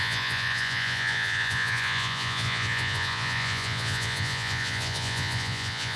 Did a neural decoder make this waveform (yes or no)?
yes